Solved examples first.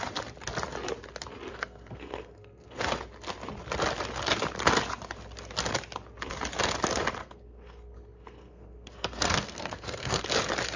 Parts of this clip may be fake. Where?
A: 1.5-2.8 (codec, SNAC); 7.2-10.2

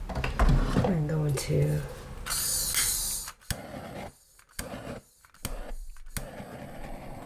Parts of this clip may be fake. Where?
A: none

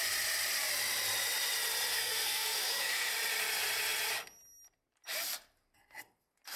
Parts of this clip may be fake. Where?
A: 1.9-3.1 (codec, SNAC)

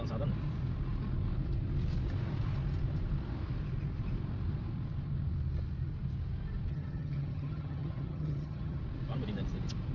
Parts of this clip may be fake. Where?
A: 6.7-8.8 (vocoder, HiFi-GAN)

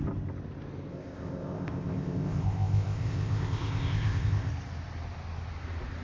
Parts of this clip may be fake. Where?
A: 0.9-4.5 (codec, ZipCodec)

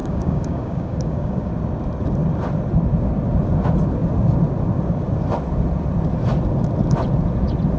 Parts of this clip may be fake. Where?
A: 0.0-1.5 (codec, DAC)